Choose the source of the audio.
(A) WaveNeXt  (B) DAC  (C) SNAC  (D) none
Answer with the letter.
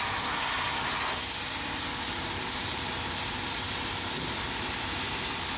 D